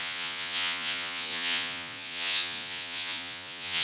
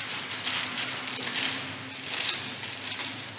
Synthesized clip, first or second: first